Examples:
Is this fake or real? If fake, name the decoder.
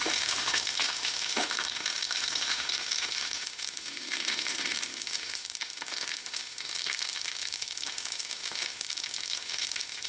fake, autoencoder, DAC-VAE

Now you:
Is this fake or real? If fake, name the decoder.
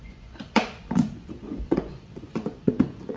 fake, vocoder, Vocos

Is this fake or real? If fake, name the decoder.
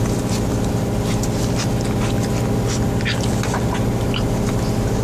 real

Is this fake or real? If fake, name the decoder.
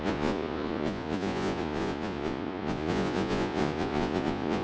fake, vocoder, Vocos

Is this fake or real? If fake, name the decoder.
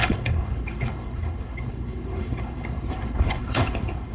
fake, codec, HILCodec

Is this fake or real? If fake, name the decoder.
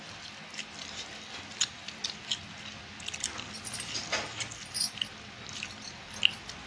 real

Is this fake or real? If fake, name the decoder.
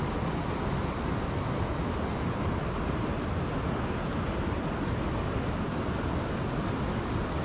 real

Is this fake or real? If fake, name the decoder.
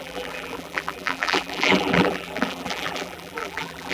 fake, vocoder, BigVGAN v2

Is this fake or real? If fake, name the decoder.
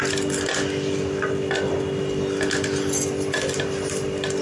real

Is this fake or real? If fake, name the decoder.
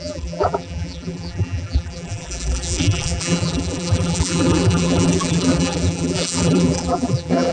fake, vocoder, BigVGAN v2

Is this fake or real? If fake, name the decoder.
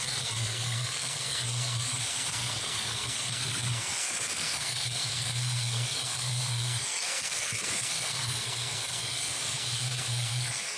fake, codec, SNAC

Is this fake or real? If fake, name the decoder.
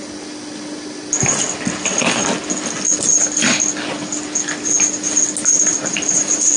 real